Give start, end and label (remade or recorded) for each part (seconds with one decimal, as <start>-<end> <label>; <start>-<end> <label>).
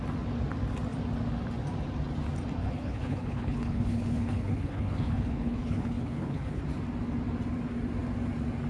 0.0-2.6 recorded; 2.6-6.6 remade; 6.6-8.7 recorded